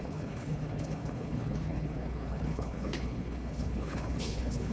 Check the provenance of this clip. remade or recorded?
remade